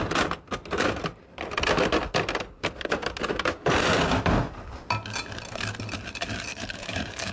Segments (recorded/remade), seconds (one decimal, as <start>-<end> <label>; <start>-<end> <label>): 0.0-6.5 recorded; 6.5-7.3 remade